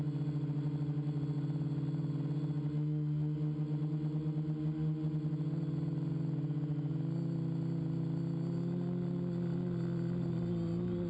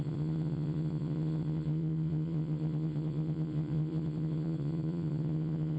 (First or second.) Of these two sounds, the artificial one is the second